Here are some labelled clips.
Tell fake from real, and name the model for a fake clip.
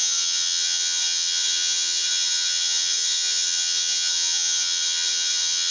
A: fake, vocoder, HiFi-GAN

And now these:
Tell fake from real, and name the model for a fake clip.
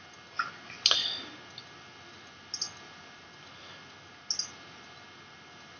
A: real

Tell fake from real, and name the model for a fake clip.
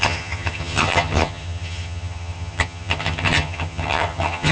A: fake, vocoder, HiFi-GAN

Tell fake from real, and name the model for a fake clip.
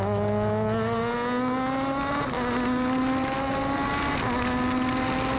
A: real